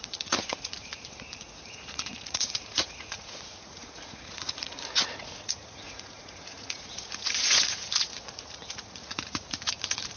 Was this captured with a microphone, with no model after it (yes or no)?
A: no